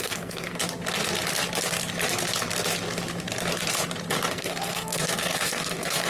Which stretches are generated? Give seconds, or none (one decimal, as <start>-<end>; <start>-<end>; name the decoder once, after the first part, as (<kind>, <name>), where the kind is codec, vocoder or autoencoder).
0.0-0.6 (codec, SNAC); 4.3-6.1